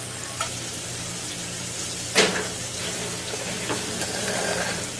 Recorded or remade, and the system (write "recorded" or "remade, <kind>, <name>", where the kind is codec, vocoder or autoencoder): recorded